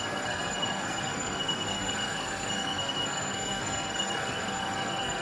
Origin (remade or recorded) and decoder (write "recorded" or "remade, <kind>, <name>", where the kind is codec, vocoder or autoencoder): remade, codec, SNAC